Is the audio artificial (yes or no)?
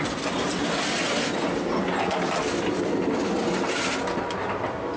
no